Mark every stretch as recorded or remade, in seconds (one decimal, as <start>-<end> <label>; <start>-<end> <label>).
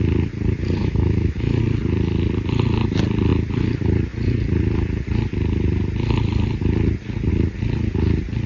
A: 0.0-0.8 recorded; 0.8-1.6 remade; 1.6-8.5 recorded